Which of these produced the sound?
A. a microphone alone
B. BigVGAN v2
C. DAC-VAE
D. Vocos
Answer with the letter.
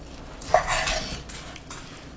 A